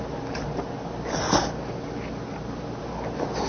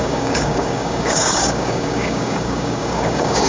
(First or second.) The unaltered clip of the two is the first